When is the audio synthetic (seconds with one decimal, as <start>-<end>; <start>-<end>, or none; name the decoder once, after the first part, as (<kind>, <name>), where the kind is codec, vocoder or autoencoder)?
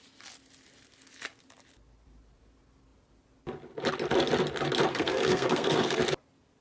4.9-6.0 (codec, SNAC)